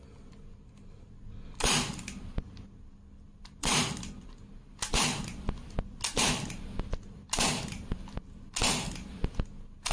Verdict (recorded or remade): recorded